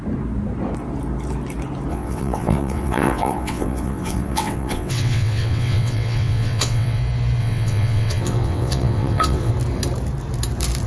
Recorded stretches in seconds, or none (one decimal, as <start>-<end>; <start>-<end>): 0.0-1.9; 7.0-7.4; 9.5-10.9